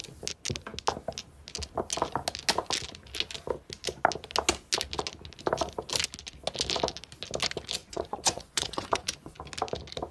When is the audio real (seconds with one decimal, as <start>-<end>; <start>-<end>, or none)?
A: 0.0-7.8; 9.4-10.1